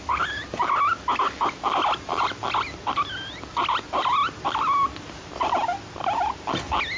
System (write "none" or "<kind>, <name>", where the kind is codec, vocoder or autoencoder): none